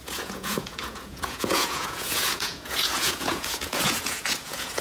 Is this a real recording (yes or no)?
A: no